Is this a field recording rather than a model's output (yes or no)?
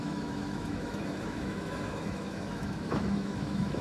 no